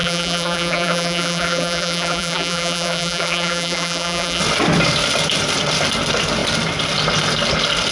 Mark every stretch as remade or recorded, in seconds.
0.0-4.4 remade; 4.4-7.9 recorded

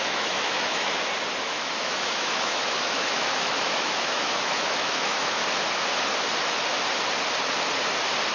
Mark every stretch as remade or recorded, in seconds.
0.0-0.9 remade; 0.9-1.4 recorded; 1.4-5.4 remade; 5.4-8.3 recorded

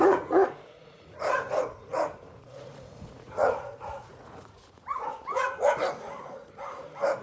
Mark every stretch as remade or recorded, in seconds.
0.0-5.5 remade; 5.5-6.2 recorded; 6.2-7.2 remade

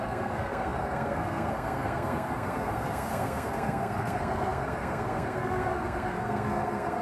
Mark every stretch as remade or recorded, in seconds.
0.0-7.0 remade

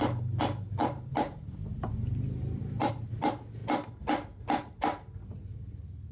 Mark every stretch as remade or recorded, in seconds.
0.0-0.8 recorded; 0.8-2.9 remade; 2.9-6.1 recorded

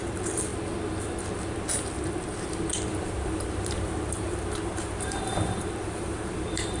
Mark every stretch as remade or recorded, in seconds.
0.0-0.5 remade; 0.5-2.9 recorded; 2.9-6.8 remade

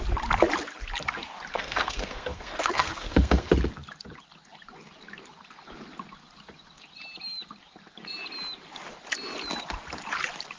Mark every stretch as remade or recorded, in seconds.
0.0-1.5 recorded; 1.5-3.5 remade; 3.5-10.6 recorded

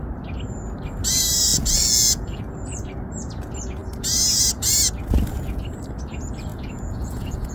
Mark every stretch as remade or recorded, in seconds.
0.0-1.5 recorded; 1.5-2.4 remade; 2.4-6.5 recorded; 6.5-7.5 remade